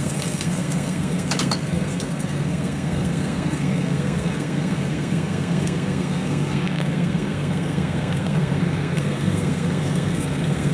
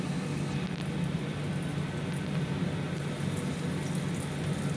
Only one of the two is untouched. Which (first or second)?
second